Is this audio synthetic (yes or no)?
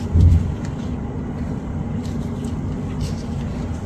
no